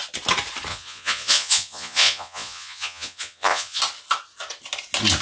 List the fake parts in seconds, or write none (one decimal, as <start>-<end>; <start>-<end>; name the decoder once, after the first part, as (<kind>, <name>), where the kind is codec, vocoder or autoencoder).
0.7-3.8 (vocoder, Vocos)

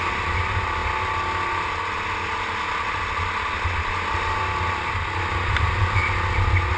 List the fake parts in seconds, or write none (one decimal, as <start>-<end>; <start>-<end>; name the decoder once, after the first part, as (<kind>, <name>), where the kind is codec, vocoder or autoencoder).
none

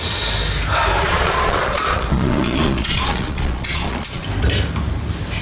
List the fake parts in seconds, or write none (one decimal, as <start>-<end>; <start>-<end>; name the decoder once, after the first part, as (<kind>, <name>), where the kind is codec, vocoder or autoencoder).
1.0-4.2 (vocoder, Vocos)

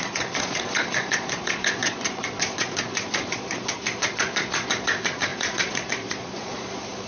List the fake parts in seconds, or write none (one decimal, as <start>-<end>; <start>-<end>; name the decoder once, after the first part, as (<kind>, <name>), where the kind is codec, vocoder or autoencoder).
0.0-7.1 (vocoder, Vocos)

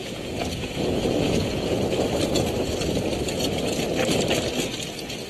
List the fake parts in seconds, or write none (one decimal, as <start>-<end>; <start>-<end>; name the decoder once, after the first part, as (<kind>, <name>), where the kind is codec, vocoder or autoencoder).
0.0-1.8 (vocoder, Vocos)

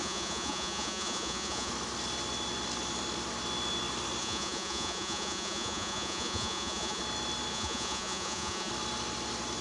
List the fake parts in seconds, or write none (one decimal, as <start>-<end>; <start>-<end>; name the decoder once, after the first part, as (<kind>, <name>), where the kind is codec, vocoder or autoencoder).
0.0-1.7 (vocoder, Vocos); 4.2-7.0; 7.5-8.7